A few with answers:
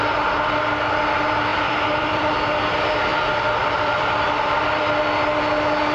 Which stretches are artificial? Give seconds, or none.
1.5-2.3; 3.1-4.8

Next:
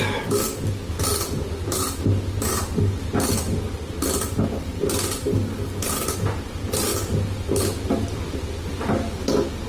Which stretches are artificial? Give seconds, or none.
3.0-3.8

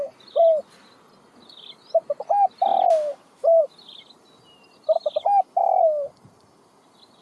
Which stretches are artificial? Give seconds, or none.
none

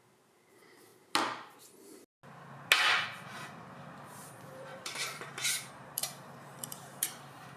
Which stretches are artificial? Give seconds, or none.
0.0-0.9; 3.7-7.6

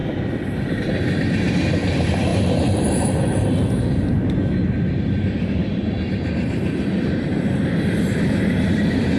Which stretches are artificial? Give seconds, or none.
0.7-9.2

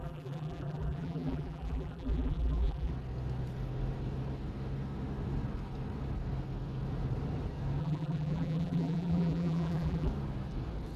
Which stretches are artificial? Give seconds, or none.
0.0-2.9; 7.8-10.1

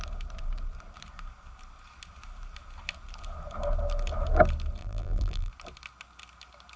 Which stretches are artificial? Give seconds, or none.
4.8-5.5